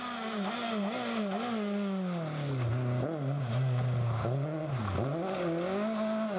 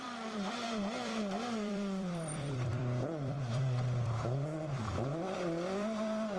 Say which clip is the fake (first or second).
second